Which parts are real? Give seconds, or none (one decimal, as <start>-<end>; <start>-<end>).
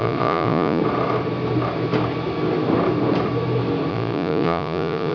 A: 0.8-3.9